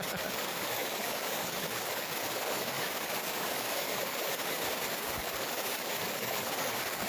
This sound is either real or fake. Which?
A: fake